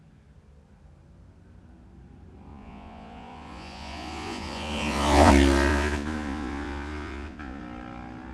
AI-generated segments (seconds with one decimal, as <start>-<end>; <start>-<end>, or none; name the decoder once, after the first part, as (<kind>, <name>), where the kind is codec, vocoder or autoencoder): 2.5-5.3 (vocoder, Vocos); 5.7-7.6